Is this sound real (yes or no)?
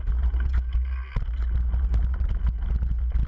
yes